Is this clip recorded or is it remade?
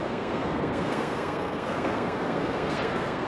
remade